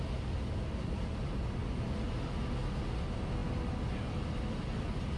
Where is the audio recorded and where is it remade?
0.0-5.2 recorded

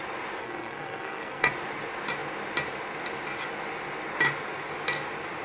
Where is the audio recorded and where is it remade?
0.0-0.4 recorded; 0.4-1.5 remade; 1.5-5.4 recorded

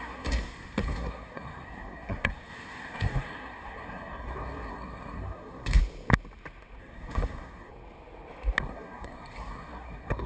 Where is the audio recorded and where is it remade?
0.0-5.8 remade; 5.8-6.8 recorded; 6.8-7.7 remade; 7.7-8.6 recorded; 8.6-10.3 remade

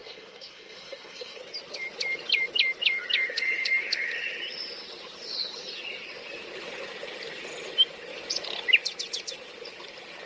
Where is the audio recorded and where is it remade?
0.0-1.4 remade; 1.4-10.3 recorded

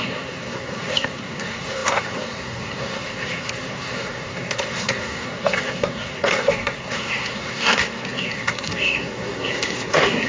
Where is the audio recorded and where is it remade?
0.0-10.3 remade

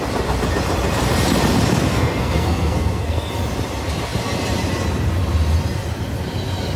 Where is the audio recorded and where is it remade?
0.0-1.9 recorded; 1.9-3.3 remade; 3.3-6.8 recorded